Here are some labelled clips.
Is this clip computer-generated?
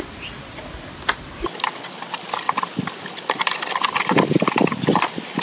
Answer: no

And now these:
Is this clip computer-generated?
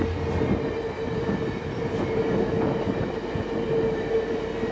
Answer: no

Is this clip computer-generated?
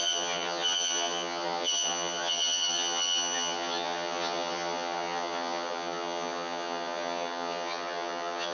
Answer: yes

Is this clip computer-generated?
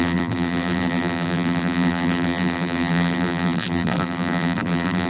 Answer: yes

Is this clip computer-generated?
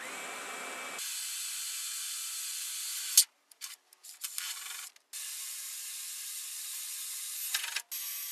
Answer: no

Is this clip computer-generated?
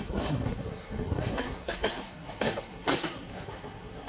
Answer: yes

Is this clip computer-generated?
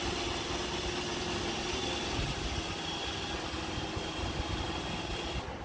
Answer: no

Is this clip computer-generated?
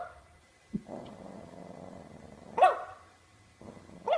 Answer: no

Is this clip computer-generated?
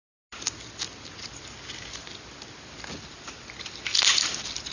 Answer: no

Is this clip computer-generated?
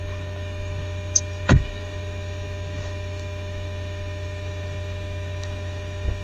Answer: yes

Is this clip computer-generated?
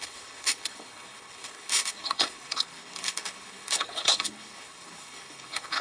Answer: yes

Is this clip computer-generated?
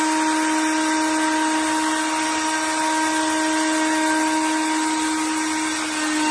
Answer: no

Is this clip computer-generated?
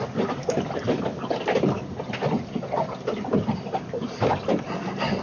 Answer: no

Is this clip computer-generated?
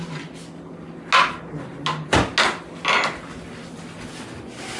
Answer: no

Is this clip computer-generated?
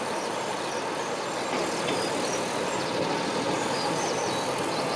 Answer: no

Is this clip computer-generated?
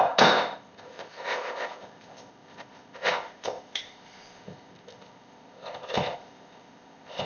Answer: yes